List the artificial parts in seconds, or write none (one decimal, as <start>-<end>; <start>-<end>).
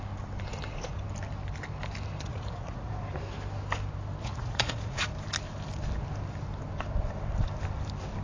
2.3-2.9; 4.2-5.0